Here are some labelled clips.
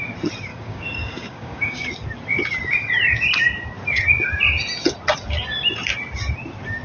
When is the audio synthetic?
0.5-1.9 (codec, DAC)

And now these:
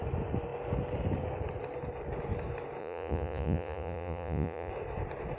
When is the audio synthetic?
2.8-4.7 (vocoder, Vocos)

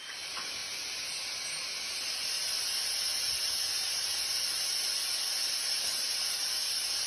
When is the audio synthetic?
none

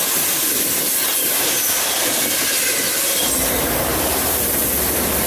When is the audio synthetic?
1.3-2.7 (vocoder, BigVGAN v2); 3.9-5.3

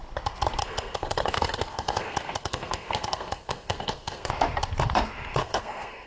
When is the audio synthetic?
0.6-4.3 (codec, SNAC); 5.4-6.1

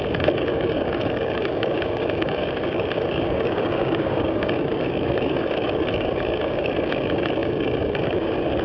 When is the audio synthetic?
0.0-8.6 (codec, DAC)